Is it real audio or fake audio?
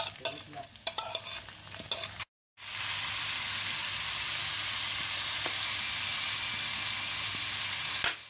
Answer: real